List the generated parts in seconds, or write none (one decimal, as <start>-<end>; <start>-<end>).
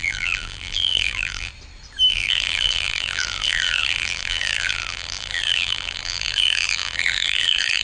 0.0-1.5; 2.1-7.8